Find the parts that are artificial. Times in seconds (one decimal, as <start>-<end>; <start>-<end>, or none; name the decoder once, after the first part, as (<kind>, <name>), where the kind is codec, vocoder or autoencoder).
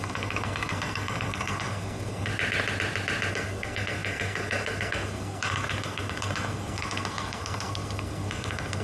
0.0-2.3 (codec, SNAC); 3.3-8.8